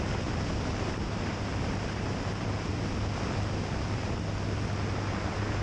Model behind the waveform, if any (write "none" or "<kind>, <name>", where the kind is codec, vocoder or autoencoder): none